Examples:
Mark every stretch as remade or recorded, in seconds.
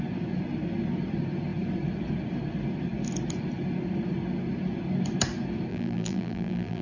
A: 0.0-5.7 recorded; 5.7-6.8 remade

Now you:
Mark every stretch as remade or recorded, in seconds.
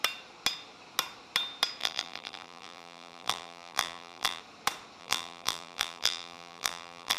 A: 0.0-1.8 recorded; 1.8-4.4 remade; 4.4-5.0 recorded; 5.0-7.2 remade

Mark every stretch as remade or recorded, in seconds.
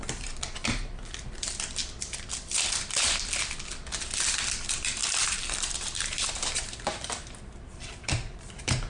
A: 0.0-5.0 recorded; 5.0-8.9 remade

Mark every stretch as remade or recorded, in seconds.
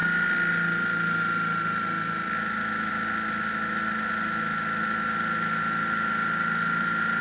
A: 0.0-7.2 recorded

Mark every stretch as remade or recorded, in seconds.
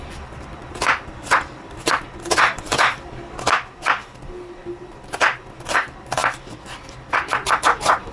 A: 0.0-4.6 remade; 4.6-5.6 recorded; 5.6-8.1 remade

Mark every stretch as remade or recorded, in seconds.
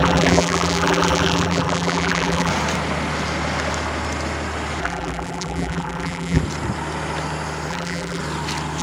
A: 0.0-2.5 remade; 2.5-4.8 recorded; 4.8-6.4 remade; 6.4-7.7 recorded; 7.7-8.2 remade; 8.2-8.8 recorded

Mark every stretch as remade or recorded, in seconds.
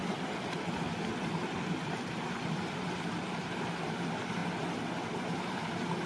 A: 0.0-6.1 remade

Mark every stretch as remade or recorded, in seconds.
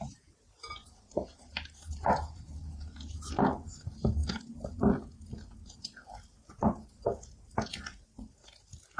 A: 0.0-0.8 recorded; 0.8-3.4 remade; 3.4-9.0 recorded